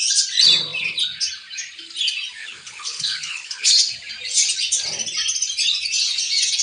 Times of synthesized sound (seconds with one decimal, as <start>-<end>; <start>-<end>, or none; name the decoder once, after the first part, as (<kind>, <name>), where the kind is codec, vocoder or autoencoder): 2.4-3.7 (codec, HILCodec)